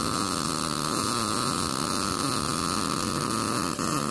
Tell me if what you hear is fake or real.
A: real